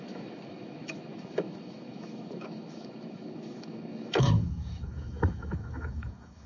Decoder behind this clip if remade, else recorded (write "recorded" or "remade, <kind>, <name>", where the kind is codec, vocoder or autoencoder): remade, autoencoder, DAC-VAE